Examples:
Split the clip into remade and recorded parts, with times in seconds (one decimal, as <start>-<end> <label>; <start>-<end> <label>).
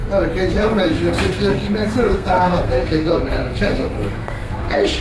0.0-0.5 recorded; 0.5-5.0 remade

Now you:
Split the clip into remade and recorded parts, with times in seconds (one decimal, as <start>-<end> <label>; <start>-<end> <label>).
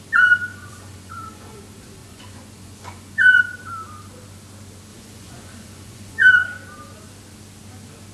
0.0-0.5 recorded; 0.5-1.6 remade; 1.6-2.0 recorded; 2.0-3.4 remade; 3.4-4.9 recorded; 4.9-6.3 remade; 6.3-8.1 recorded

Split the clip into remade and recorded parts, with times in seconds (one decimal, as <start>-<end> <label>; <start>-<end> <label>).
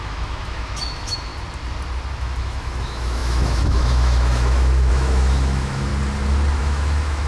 0.0-1.3 remade; 1.3-2.1 recorded; 2.1-5.9 remade; 5.9-6.6 recorded; 6.6-7.3 remade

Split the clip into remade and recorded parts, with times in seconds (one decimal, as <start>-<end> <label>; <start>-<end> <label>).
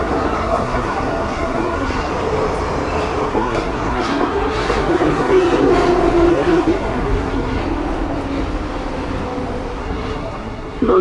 0.0-2.1 remade; 2.1-3.3 recorded; 3.3-5.7 remade; 5.7-6.3 recorded; 6.3-7.6 remade; 7.6-9.8 recorded; 9.8-11.0 remade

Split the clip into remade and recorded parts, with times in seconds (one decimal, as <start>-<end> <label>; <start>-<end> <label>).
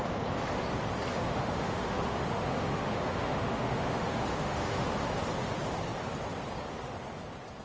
0.0-1.1 recorded; 1.1-4.9 remade; 4.9-7.6 recorded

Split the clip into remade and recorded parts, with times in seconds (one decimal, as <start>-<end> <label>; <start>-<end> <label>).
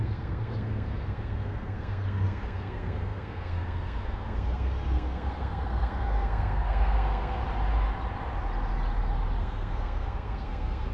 0.0-7.4 remade; 7.4-9.4 recorded; 9.4-10.9 remade